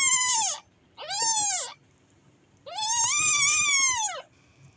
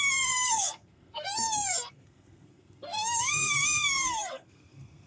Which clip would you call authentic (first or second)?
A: first